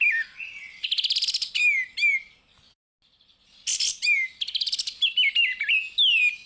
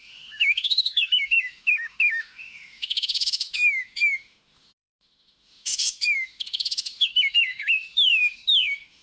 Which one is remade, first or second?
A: second